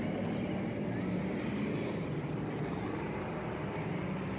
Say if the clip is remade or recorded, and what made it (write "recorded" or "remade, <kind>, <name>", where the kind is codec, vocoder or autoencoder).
recorded